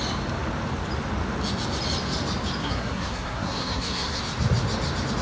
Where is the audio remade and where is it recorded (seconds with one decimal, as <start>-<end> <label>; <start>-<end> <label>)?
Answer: 0.0-2.6 recorded; 2.6-4.2 remade; 4.2-5.2 recorded